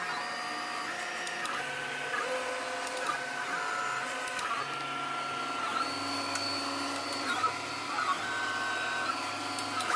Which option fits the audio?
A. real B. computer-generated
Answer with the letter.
A